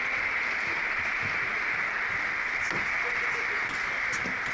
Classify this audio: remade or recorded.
recorded